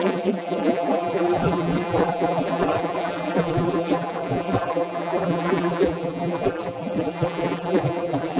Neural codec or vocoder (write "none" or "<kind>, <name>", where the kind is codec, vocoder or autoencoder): vocoder, BigVGAN v2